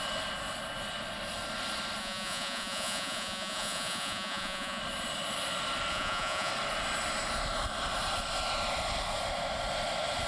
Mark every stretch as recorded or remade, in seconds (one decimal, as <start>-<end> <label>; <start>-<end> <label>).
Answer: 0.0-2.0 recorded; 2.0-4.8 remade; 4.8-5.9 recorded; 5.9-6.5 remade; 6.5-10.3 recorded